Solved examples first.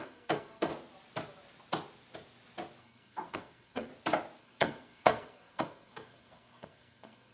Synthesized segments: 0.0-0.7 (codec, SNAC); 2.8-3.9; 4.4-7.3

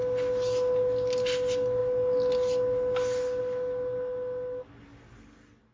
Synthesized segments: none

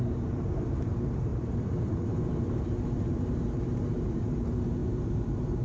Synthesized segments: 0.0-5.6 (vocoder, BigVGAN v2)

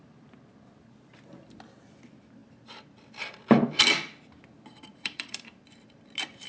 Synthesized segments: 2.4-3.4 (vocoder, BigVGAN v2); 4.9-6.5